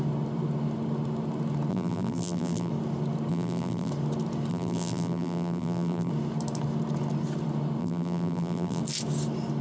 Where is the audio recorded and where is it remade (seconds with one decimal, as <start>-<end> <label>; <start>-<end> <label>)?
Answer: 0.0-1.7 recorded; 1.7-2.7 remade; 2.7-3.3 recorded; 3.3-3.9 remade; 3.9-4.5 recorded; 4.5-6.1 remade; 6.1-7.8 recorded; 7.8-8.8 remade; 8.8-9.6 recorded